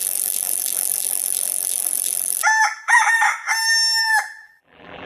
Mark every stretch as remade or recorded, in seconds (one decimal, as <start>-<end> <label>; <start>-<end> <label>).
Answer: 0.0-3.1 remade; 3.1-4.0 recorded; 4.0-5.1 remade